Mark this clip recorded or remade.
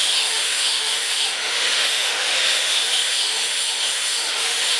remade